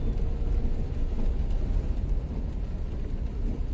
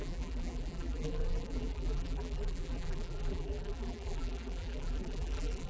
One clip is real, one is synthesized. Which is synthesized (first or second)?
second